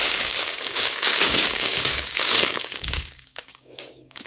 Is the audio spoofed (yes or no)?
yes